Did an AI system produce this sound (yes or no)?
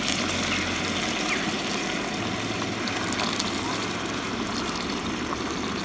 no